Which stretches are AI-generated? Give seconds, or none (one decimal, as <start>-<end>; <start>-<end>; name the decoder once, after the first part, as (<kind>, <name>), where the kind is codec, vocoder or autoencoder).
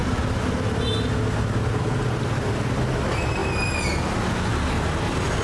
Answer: none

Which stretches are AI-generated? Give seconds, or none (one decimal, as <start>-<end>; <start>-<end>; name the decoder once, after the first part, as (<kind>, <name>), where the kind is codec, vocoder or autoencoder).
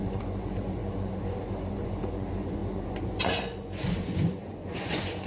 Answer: 0.0-5.3 (vocoder, Vocos)